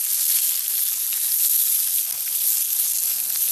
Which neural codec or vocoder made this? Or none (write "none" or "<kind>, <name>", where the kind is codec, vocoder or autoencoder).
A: none